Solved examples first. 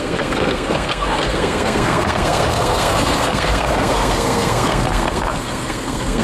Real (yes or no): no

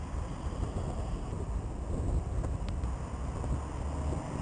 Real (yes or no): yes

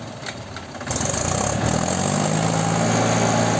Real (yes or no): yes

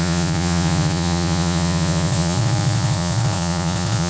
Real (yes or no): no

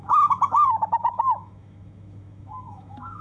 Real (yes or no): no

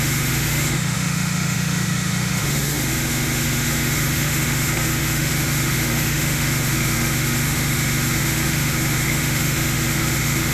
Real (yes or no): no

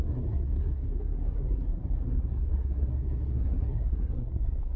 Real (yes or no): no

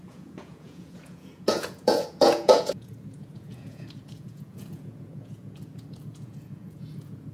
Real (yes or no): no